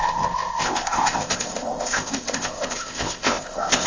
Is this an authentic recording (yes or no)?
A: no